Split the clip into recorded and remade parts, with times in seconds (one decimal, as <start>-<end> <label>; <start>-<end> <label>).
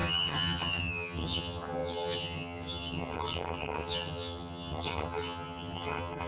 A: 0.0-6.3 remade